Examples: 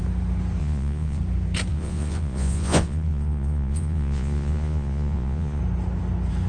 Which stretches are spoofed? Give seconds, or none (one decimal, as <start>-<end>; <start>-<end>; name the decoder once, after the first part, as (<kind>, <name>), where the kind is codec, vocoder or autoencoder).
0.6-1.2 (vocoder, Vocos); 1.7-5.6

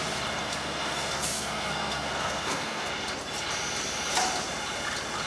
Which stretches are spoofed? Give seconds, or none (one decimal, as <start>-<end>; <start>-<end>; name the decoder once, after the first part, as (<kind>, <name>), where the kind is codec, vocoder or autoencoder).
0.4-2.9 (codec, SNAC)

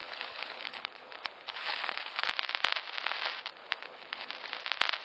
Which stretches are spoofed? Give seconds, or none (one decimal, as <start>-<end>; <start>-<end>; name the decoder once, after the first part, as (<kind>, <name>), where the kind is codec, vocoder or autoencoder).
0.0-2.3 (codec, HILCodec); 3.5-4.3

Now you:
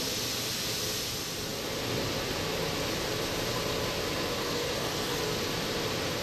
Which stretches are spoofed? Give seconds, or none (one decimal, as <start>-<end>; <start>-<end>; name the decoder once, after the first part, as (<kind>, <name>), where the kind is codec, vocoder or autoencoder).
4.4-5.2 (codec, SNAC)